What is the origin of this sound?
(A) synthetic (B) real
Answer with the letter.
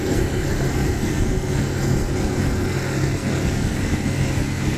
A